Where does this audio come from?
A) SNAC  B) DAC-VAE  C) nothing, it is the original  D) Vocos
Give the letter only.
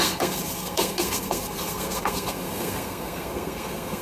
A